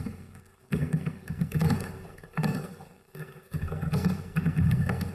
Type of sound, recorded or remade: remade